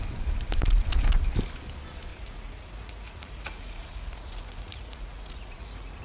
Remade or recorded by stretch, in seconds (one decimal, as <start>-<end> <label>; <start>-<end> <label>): 0.0-2.1 recorded; 2.1-6.0 remade